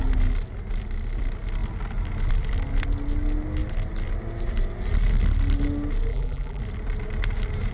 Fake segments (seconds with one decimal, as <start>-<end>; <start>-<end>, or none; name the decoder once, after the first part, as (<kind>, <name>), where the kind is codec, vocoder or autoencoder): 6.1-6.6 (vocoder, BigVGAN v2)